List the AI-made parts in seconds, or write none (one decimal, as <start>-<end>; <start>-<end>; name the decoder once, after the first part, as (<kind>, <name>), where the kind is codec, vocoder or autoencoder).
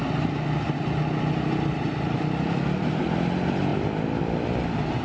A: none